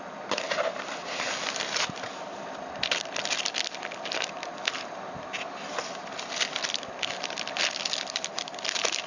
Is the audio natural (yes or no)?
yes